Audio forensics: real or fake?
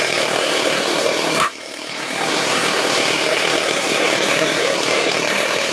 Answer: fake